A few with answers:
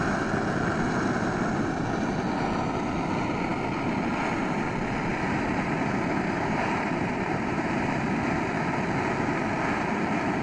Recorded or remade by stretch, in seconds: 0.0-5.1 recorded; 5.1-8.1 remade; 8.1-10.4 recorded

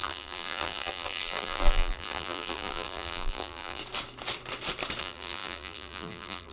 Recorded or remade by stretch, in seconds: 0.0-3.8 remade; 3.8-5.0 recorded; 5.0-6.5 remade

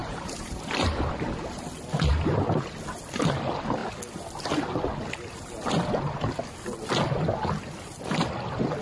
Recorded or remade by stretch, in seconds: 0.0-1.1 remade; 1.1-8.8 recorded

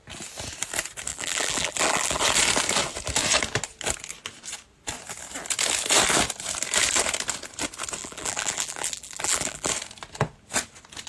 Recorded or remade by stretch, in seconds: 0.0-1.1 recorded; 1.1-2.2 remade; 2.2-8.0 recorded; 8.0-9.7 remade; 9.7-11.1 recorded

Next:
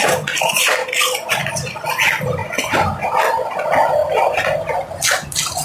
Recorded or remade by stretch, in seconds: 0.0-0.8 remade; 0.8-1.5 recorded; 1.5-5.6 remade

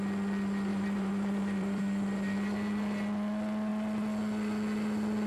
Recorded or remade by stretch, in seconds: 0.0-0.7 recorded; 0.7-1.8 remade; 1.8-5.3 recorded

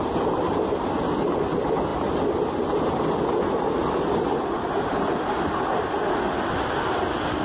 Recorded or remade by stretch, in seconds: 0.0-1.9 recorded; 1.9-3.1 remade; 3.1-7.4 recorded